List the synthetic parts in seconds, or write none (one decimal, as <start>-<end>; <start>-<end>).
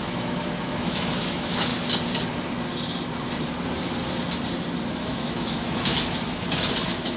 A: 0.0-1.7; 4.8-5.9; 6.8-7.2